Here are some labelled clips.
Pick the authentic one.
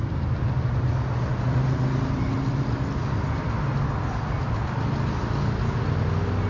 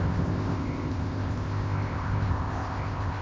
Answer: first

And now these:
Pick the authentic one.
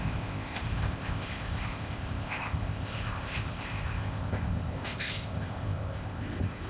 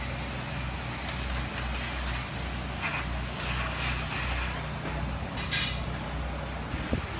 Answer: second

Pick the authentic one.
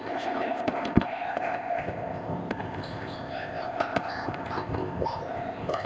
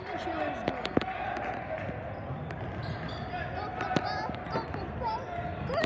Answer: second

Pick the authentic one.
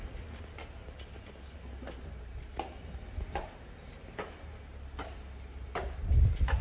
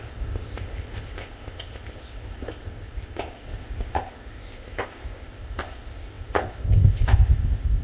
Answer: first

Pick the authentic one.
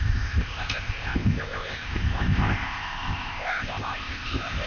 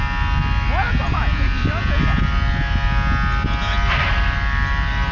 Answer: second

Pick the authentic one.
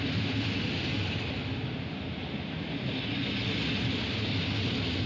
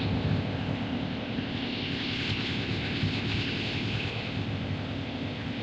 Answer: first